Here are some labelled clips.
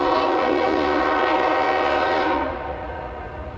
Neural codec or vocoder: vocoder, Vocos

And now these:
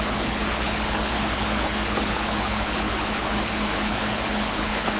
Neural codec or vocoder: codec, HILCodec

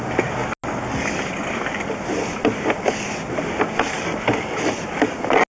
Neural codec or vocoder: none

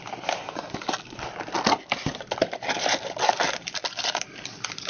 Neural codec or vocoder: none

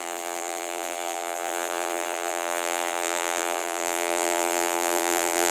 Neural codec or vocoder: vocoder, BigVGAN v2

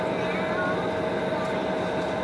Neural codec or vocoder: none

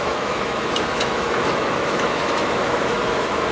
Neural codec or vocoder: autoencoder, DAC-VAE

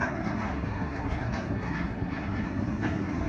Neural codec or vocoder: codec, SNAC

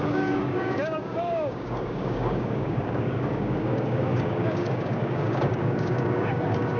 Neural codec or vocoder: codec, DAC